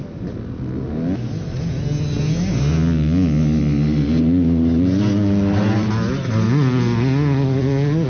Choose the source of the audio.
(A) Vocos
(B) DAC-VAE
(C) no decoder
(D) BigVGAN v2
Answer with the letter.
C